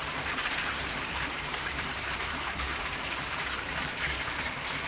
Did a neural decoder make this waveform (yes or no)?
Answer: yes